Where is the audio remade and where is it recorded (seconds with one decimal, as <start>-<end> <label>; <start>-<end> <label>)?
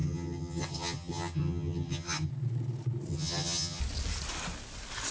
0.0-2.3 remade; 2.3-3.1 recorded; 3.1-3.8 remade; 3.8-5.1 recorded